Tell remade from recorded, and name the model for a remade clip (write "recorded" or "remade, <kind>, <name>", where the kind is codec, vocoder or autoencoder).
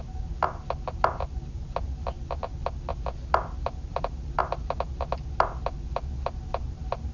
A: recorded